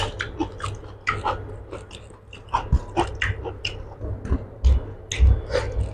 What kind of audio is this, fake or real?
real